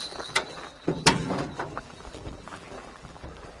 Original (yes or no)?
no